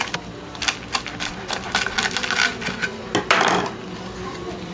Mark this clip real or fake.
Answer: real